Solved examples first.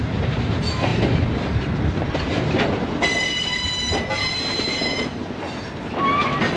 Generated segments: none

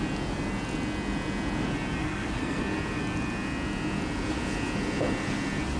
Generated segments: 2.0-2.6 (codec, SNAC)